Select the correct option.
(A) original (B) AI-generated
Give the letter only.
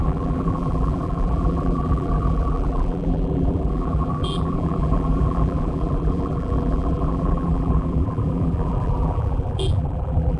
B